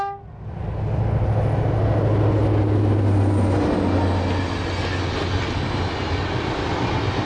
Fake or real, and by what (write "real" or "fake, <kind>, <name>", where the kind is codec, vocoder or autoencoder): real